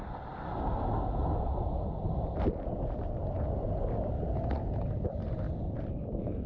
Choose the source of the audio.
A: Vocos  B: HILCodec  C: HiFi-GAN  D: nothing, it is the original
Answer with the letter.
D